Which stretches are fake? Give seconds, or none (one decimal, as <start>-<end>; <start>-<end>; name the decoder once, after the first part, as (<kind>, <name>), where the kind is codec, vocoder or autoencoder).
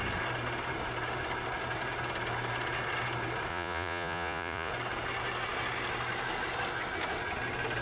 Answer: 3.5-4.7 (vocoder, Vocos)